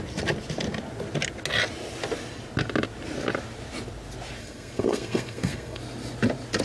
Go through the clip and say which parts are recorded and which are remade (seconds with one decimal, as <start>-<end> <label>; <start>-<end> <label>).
0.0-4.4 recorded; 4.4-5.8 remade; 5.8-6.6 recorded